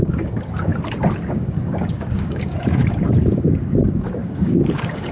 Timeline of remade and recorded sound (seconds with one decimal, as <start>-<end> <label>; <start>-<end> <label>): 0.0-0.7 remade; 0.7-1.3 recorded; 1.3-2.8 remade; 2.8-3.3 recorded; 3.3-5.1 remade